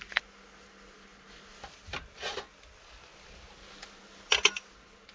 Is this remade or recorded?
recorded